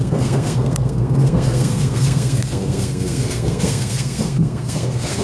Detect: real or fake fake